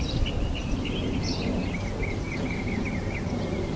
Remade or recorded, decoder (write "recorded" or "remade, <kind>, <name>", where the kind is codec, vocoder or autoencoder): remade, vocoder, BigVGAN v2